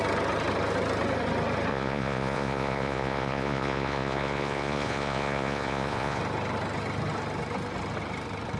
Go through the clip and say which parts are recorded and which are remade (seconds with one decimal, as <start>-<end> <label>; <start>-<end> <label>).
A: 0.0-1.7 recorded; 1.7-6.2 remade; 6.2-8.6 recorded